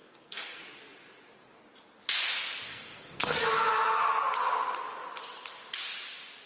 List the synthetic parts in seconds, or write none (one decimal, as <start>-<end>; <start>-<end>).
0.0-0.6; 2.7-3.4